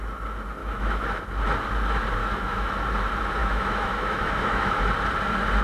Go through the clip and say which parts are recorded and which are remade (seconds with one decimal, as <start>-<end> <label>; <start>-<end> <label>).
0.0-0.6 recorded; 0.6-1.2 remade; 1.2-2.2 recorded; 2.2-2.7 remade; 2.7-3.4 recorded; 3.4-4.8 remade; 4.8-5.6 recorded

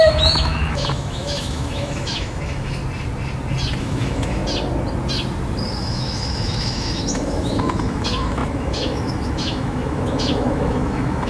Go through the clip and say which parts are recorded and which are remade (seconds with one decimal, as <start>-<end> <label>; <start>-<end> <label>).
0.0-2.8 remade; 2.8-3.8 recorded; 3.8-4.4 remade; 4.4-5.8 recorded; 5.8-11.3 remade